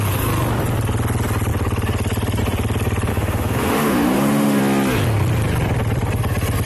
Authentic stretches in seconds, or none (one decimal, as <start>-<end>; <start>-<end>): 0.0-3.1; 4.6-6.7